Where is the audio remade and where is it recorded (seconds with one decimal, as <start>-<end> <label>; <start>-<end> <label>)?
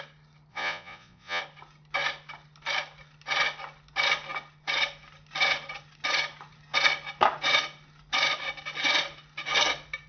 0.0-0.5 recorded; 0.5-1.4 remade; 1.4-10.1 recorded